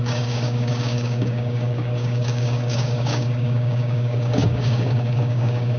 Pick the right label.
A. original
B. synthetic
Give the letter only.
B